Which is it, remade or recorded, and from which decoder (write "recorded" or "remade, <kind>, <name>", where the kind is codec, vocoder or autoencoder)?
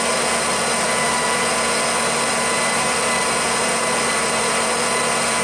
remade, vocoder, BigVGAN v2